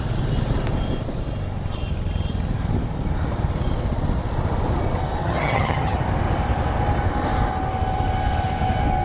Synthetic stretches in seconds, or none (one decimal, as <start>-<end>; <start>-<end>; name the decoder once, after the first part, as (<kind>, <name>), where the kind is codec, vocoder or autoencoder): 5.2-6.0 (vocoder, HiFi-GAN)